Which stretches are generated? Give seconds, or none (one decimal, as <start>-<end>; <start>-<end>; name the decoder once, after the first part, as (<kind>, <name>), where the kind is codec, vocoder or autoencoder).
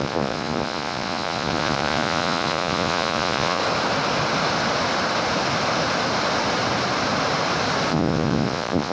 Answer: 0.0-3.6 (vocoder, Vocos); 7.9-8.9